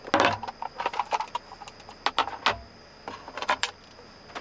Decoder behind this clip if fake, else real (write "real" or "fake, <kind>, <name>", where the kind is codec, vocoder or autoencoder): real